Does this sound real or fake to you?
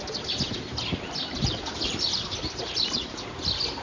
real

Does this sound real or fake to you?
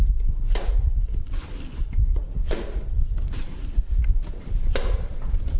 real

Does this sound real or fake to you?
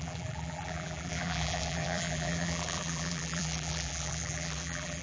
fake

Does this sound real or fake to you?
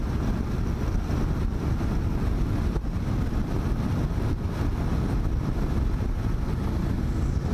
real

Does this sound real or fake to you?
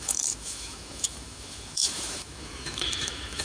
fake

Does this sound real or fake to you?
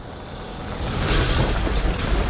real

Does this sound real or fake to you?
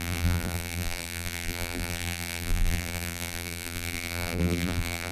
fake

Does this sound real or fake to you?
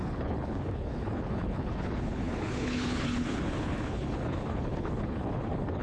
fake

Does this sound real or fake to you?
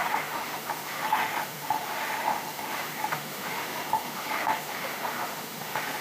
fake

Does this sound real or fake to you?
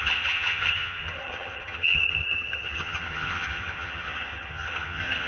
fake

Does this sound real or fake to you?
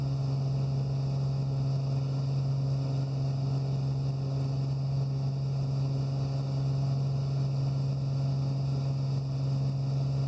real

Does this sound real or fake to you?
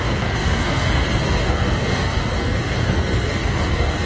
fake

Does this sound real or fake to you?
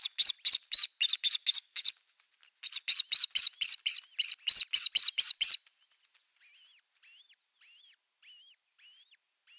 real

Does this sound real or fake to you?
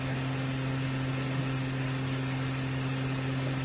real